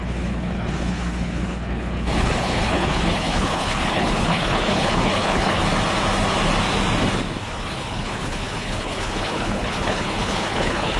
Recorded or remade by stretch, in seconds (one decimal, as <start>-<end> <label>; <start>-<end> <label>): 0.0-5.6 remade; 5.6-7.4 recorded; 7.4-11.0 remade

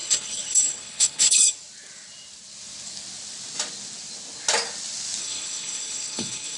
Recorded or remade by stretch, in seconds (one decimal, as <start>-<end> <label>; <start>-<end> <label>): 0.0-1.5 remade; 1.5-5.2 recorded; 5.2-6.6 remade

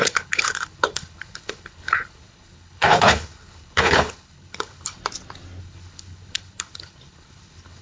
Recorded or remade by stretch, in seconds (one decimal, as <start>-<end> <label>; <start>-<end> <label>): 0.0-5.0 remade; 5.0-5.6 recorded; 5.6-7.8 remade